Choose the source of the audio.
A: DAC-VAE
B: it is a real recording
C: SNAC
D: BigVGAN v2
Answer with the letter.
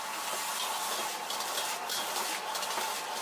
B